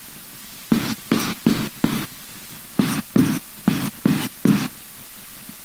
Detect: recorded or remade recorded